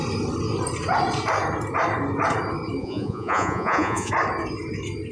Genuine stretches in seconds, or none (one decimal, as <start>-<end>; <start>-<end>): 0.0-2.8; 4.1-5.1